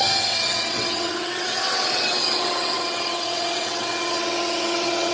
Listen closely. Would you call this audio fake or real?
fake